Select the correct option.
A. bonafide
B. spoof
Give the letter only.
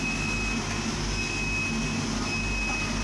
A